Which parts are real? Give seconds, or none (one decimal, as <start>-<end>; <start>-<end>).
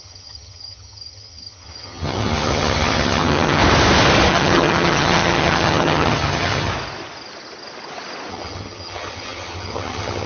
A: 3.6-4.3; 6.7-8.3